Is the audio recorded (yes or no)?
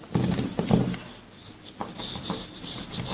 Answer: yes